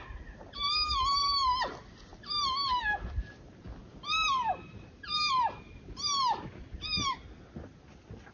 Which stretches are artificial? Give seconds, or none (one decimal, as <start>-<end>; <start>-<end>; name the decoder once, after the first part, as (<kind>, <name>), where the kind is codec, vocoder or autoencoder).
none